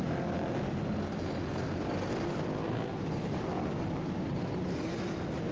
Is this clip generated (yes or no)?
no